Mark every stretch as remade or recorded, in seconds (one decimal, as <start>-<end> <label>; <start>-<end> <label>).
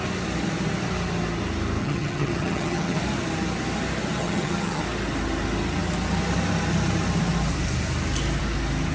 0.0-1.8 recorded; 1.8-3.0 remade; 3.0-4.2 recorded; 4.2-4.8 remade; 4.8-8.9 recorded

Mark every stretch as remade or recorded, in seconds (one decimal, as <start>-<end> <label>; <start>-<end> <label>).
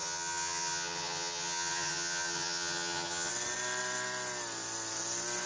0.0-3.3 remade; 3.3-5.5 recorded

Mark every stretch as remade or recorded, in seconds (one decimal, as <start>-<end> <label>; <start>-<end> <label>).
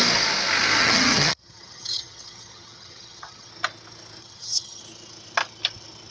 0.0-0.8 recorded; 0.8-3.5 remade; 3.5-4.2 recorded; 4.2-4.8 remade; 4.8-6.1 recorded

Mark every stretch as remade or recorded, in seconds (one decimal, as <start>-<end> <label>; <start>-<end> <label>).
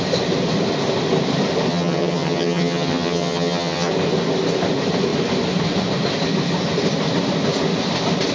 0.0-1.7 recorded; 1.7-3.9 remade; 3.9-8.3 recorded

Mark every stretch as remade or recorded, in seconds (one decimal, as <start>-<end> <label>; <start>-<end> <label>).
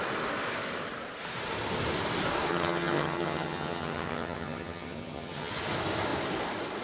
0.0-2.5 recorded; 2.5-5.5 remade; 5.5-6.8 recorded